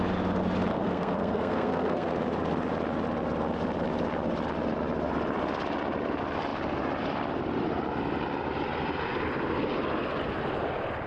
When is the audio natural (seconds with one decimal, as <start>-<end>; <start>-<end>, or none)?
0.0-0.7; 2.1-11.1